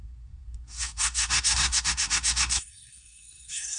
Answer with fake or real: fake